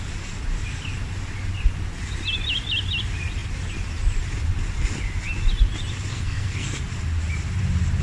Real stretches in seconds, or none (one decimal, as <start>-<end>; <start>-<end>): 0.0-6.1; 6.8-8.0